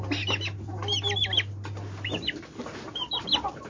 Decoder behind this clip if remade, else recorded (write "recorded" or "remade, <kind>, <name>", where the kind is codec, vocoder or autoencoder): recorded